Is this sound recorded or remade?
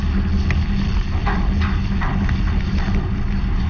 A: recorded